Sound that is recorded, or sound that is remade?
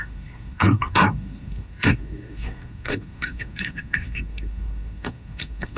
remade